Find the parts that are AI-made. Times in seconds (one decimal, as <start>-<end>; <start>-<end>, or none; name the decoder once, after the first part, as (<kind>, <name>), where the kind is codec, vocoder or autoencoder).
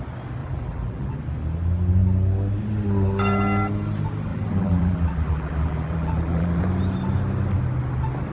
0.4-1.2 (vocoder, BigVGAN v2); 4.3-6.6